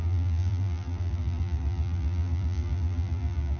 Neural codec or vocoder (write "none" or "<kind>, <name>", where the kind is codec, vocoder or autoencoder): vocoder, BigVGAN v2